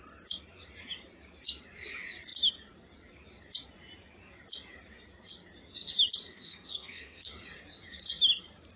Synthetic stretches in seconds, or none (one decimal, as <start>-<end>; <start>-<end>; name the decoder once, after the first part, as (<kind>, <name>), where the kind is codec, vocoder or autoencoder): 6.3-7.3 (codec, SNAC)